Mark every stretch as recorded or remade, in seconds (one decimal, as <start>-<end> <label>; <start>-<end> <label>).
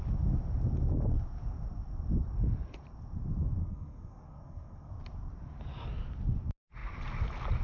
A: 0.0-3.6 recorded; 3.6-4.9 remade; 4.9-7.6 recorded